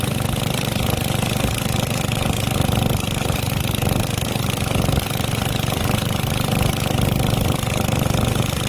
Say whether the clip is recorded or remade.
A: recorded